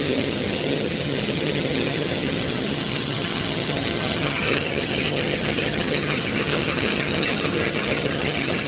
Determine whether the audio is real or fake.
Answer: fake